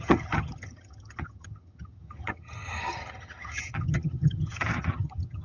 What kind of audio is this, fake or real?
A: fake